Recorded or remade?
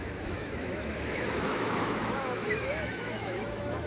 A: remade